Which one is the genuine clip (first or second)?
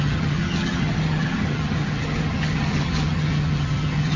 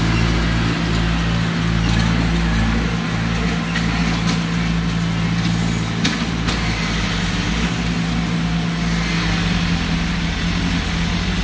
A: second